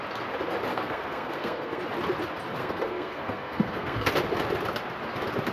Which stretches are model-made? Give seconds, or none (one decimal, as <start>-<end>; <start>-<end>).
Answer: 0.7-1.8; 2.6-4.1